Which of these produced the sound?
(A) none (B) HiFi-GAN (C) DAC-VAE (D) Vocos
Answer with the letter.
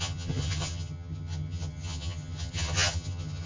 B